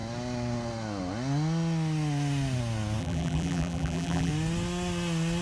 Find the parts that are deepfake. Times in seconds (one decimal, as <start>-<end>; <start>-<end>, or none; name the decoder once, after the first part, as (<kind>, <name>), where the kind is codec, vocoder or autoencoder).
3.0-4.3 (vocoder, BigVGAN v2)